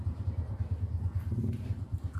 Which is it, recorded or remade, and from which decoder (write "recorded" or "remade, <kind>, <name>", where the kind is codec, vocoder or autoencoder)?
recorded